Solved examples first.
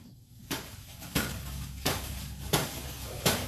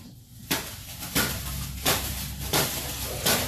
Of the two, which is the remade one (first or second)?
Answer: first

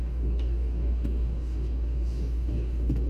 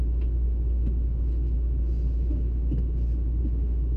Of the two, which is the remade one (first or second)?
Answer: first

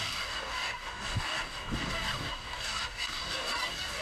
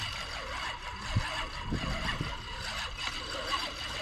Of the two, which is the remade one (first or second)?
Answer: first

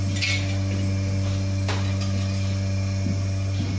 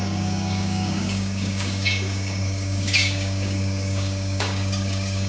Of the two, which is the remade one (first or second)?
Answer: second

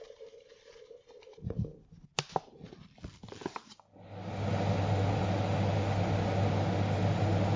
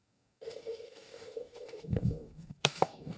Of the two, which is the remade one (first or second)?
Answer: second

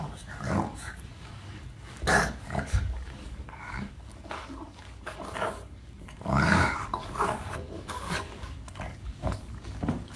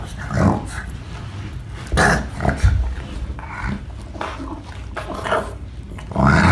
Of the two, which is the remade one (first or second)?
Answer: first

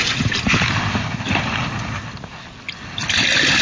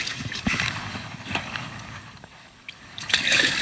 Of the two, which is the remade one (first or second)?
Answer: second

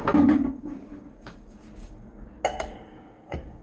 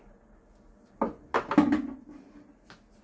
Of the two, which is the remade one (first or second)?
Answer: first